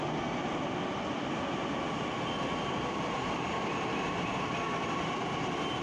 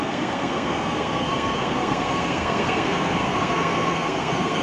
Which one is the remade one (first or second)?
second